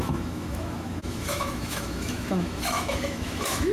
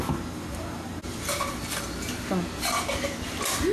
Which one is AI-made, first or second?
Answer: first